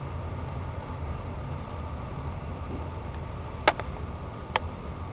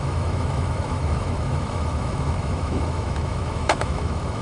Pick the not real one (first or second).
second